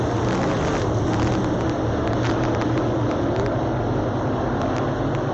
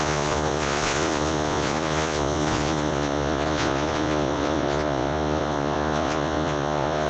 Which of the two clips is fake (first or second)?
second